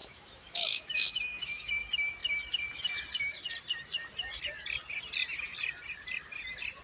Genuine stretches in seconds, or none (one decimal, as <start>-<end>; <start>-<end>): 1.7-6.8